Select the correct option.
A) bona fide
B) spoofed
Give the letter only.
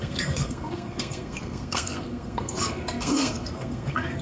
B